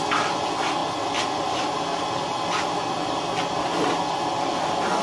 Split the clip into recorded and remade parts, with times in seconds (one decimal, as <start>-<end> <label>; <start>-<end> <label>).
0.0-5.0 recorded